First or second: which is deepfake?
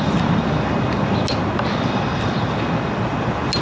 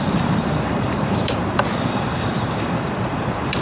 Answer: second